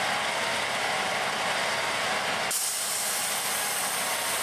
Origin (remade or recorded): recorded